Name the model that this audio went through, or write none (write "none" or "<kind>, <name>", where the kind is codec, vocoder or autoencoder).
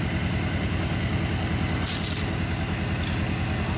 none